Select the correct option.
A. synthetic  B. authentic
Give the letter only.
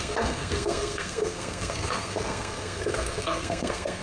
A